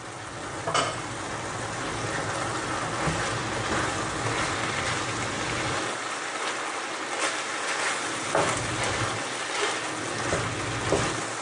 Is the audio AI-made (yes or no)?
no